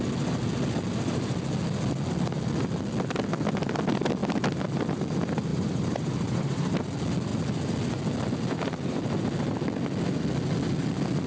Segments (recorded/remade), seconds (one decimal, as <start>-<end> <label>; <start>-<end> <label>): 0.0-5.5 recorded; 5.5-6.8 remade; 6.8-11.3 recorded

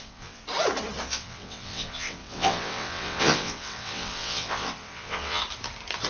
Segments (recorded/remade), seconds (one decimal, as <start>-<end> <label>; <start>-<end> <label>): 0.0-0.4 remade; 0.4-1.0 recorded; 1.0-5.4 remade; 5.4-6.1 recorded

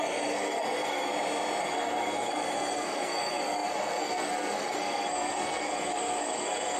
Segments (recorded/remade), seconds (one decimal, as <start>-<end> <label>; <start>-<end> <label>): 0.0-1.1 remade; 1.1-1.6 recorded; 1.6-6.8 remade

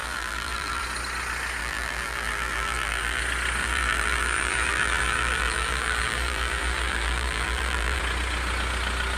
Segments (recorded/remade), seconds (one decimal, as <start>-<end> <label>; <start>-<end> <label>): 0.0-0.8 remade; 0.8-1.6 recorded; 1.6-3.2 remade; 3.2-3.6 recorded; 3.6-8.0 remade; 8.0-9.2 recorded

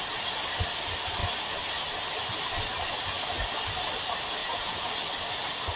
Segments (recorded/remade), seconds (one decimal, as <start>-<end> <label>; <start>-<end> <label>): 0.0-4.4 recorded; 4.4-4.9 remade; 4.9-5.8 recorded

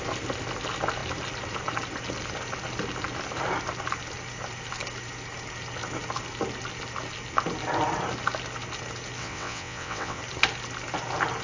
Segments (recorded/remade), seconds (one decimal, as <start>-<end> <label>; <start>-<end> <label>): 0.0-9.2 recorded; 9.2-10.2 remade; 10.2-11.4 recorded